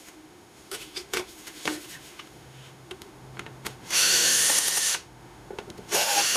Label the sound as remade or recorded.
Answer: remade